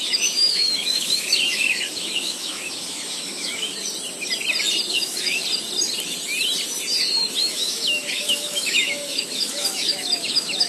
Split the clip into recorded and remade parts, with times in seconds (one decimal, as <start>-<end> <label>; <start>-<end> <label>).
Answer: 0.0-3.7 remade; 3.7-4.9 recorded; 4.9-5.4 remade; 5.4-7.4 recorded; 7.4-10.7 remade